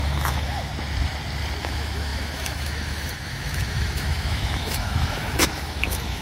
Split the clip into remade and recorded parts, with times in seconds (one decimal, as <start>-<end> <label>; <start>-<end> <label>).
0.0-0.7 remade; 0.7-1.6 recorded; 1.6-6.2 remade